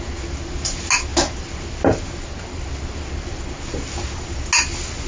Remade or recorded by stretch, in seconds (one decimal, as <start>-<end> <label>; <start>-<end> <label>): 0.0-5.1 recorded